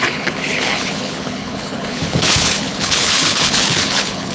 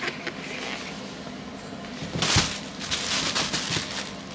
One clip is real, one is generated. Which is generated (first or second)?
first